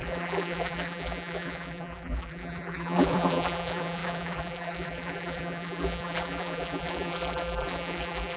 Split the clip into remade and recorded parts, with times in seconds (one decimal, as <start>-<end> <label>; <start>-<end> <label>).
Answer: 0.0-8.4 remade